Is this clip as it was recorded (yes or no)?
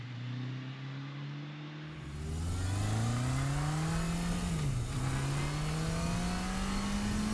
yes